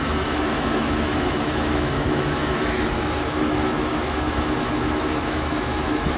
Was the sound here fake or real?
fake